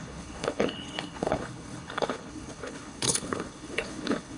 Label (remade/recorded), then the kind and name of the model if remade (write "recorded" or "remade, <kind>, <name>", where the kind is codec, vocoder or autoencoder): remade, codec, HILCodec